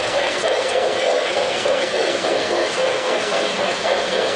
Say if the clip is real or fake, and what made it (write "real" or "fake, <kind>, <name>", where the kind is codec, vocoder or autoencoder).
fake, codec, SNAC